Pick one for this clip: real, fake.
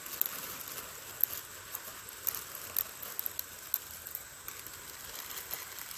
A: real